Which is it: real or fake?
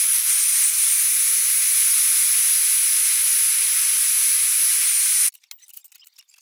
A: real